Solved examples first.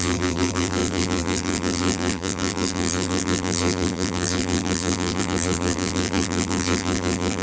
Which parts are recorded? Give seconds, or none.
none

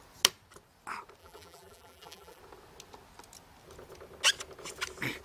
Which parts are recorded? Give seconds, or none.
0.0-1.2; 2.4-5.2

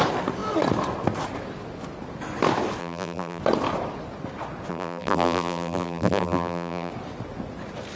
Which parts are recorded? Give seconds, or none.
0.0-2.8; 3.4-4.7; 6.9-8.0